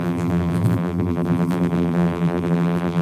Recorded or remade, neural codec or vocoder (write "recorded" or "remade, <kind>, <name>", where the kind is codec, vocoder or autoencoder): remade, vocoder, BigVGAN v2